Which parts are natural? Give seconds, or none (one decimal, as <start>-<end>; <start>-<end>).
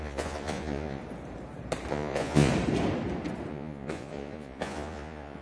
1.0-1.9; 2.5-3.5